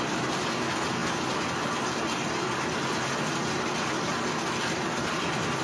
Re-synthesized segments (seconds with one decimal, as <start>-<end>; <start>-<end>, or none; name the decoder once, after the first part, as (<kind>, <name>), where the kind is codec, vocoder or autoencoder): none